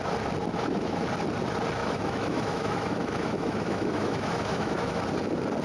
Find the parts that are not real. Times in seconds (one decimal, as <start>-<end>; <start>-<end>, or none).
0.5-1.1; 1.8-5.0